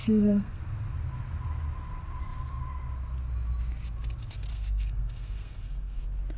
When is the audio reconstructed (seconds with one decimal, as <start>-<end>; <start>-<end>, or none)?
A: 0.0-0.6; 4.5-6.0

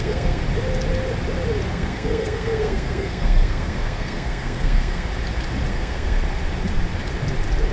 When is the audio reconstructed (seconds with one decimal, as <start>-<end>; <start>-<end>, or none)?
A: 0.0-0.4; 1.7-5.1; 5.7-6.2

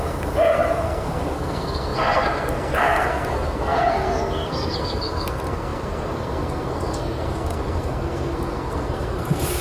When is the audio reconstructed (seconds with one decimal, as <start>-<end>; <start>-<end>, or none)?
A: 0.0-9.6